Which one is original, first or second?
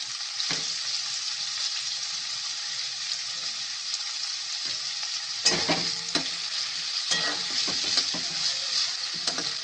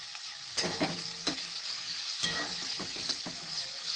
first